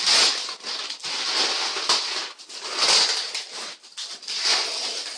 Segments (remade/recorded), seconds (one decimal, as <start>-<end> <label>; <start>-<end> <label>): 0.0-5.2 recorded